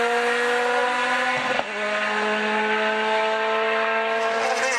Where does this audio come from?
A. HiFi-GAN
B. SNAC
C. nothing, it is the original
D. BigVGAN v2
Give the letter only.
C